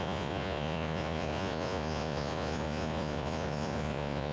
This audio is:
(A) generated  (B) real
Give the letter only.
A